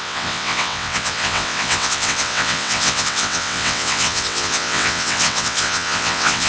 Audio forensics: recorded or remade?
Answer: remade